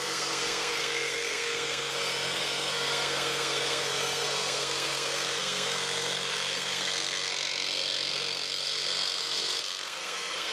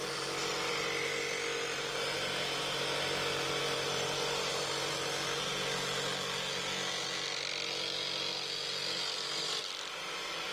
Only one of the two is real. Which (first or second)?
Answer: second